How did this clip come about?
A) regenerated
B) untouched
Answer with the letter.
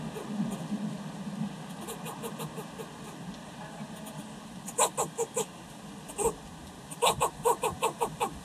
B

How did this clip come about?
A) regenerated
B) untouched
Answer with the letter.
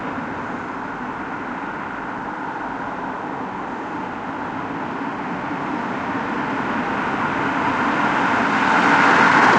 B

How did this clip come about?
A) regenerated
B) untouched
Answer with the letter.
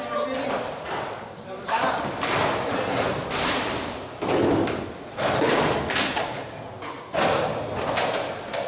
B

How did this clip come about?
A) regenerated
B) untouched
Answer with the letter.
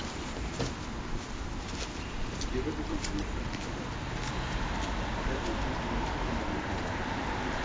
A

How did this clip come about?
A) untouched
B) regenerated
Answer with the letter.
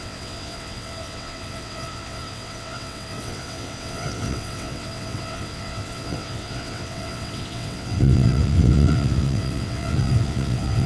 B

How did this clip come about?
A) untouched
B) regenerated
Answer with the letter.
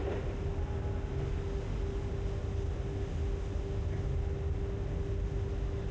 A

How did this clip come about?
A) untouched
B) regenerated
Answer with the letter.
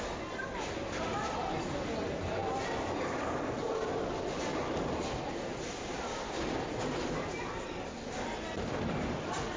A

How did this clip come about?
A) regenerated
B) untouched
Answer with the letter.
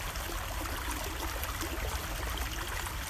B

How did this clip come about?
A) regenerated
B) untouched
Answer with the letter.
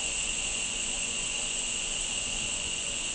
A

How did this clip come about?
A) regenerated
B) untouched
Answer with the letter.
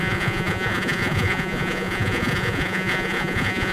A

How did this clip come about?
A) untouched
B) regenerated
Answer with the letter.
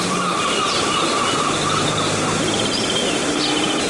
A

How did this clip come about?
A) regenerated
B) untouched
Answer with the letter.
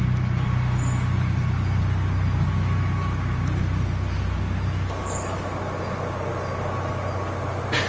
B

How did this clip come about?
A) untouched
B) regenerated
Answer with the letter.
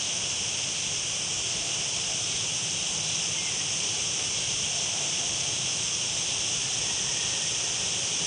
A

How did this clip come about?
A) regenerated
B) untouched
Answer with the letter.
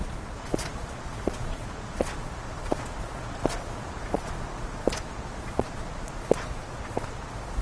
A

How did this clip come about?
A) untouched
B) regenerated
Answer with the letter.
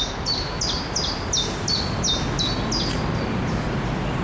A